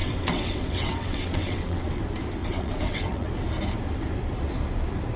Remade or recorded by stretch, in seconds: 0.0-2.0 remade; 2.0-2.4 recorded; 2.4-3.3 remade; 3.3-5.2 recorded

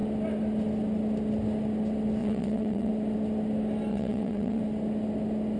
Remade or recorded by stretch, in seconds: 0.0-2.2 recorded; 2.2-2.9 remade; 2.9-3.9 recorded; 3.9-4.6 remade; 4.6-5.6 recorded

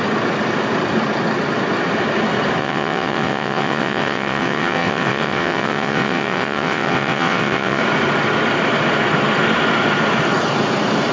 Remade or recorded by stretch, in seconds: 0.0-2.6 recorded; 2.6-7.8 remade; 7.8-11.1 recorded

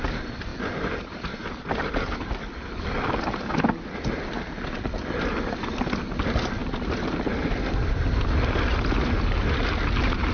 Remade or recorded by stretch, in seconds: 0.0-10.3 recorded

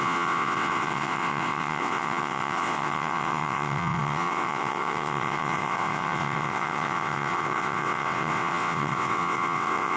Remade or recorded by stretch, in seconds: 0.0-10.0 remade

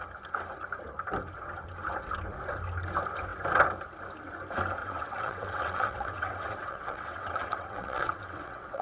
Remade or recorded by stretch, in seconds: 0.0-4.8 recorded; 4.8-8.8 remade

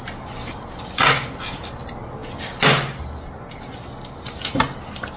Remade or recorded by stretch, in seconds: 0.0-5.2 recorded

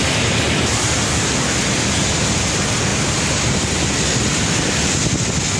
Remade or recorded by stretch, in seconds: 0.0-5.6 recorded